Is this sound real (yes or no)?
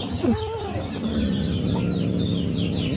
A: yes